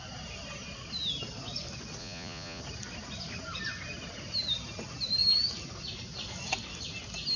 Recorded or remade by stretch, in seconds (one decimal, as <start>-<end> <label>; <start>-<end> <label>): 0.0-2.0 recorded; 2.0-2.6 remade; 2.6-7.4 recorded